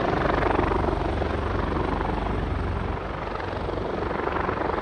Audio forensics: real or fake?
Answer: real